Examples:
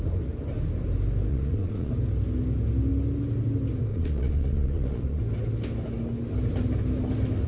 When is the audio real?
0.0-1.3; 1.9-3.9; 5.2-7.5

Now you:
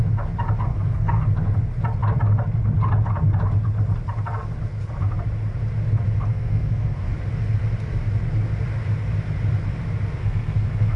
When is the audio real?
0.0-0.7; 1.2-6.3; 7.1-10.2